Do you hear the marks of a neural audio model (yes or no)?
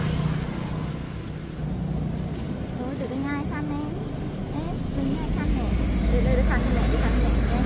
no